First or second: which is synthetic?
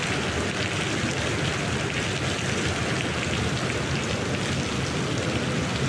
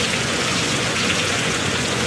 second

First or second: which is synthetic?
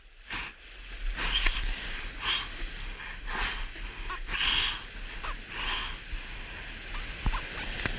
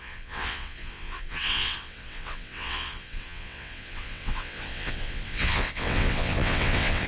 second